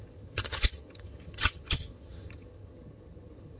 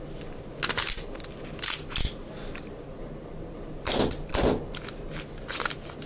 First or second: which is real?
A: second